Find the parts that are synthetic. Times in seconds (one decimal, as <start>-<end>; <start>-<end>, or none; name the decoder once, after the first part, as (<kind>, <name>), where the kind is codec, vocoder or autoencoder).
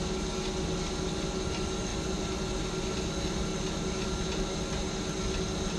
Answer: none